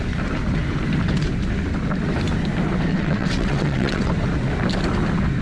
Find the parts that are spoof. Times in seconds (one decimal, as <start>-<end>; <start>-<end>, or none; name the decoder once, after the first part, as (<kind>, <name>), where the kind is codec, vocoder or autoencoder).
2.9-4.1 (vocoder, WaveNeXt)